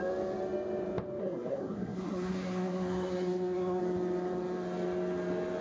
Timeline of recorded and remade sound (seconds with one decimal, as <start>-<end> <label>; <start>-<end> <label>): 0.0-1.2 recorded; 1.2-3.8 remade; 3.8-5.6 recorded